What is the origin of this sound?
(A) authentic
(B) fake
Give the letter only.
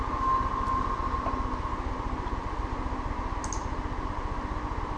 A